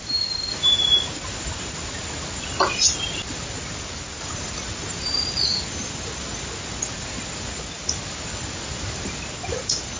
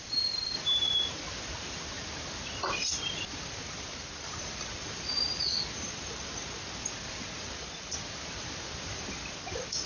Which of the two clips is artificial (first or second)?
second